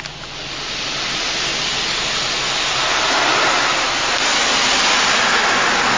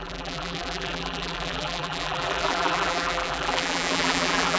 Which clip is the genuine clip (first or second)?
first